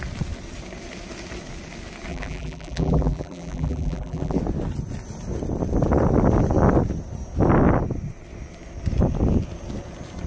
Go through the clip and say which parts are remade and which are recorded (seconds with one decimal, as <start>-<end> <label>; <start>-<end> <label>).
0.0-2.1 recorded; 2.1-4.4 remade; 4.4-10.3 recorded